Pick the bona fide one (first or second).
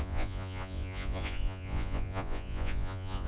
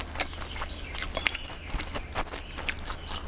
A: second